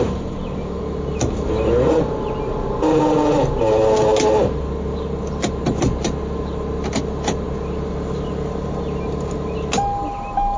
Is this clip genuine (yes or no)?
yes